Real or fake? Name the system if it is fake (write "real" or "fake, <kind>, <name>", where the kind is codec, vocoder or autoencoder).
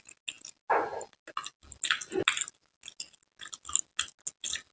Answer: real